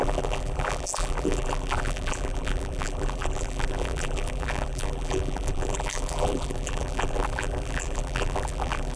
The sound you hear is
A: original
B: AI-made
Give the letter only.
B